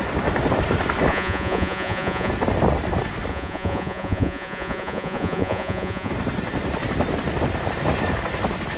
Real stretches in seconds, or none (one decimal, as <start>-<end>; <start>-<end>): 0.0-1.1; 2.3-3.3; 6.1-8.8

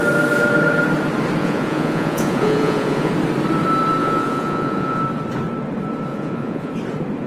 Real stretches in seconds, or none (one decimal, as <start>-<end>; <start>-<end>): 0.0-1.4; 3.1-4.0; 5.0-6.1; 6.7-7.3

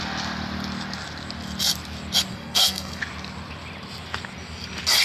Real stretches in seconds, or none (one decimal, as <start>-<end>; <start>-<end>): 0.0-2.3; 3.0-5.0

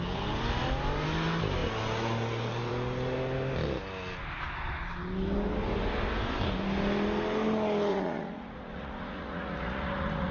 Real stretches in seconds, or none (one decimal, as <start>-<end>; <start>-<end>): 0.0-7.9

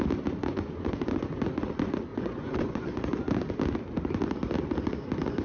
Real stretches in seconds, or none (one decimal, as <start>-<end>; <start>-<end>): 0.0-0.5; 1.3-2.1; 3.0-5.4

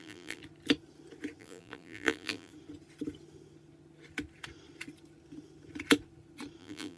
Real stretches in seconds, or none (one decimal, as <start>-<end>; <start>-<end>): 0.4-1.4; 2.5-6.6

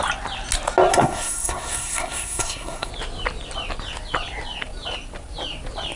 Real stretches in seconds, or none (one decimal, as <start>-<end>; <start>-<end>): 0.0-0.9; 2.9-6.0